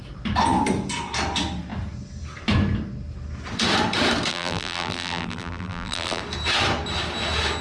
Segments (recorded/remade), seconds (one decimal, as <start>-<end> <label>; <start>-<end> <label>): 0.0-4.3 recorded; 4.3-6.2 remade; 6.2-7.6 recorded